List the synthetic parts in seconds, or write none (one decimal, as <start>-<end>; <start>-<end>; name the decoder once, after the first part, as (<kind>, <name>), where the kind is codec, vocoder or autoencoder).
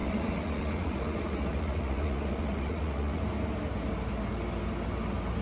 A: 0.0-3.2 (vocoder, Vocos)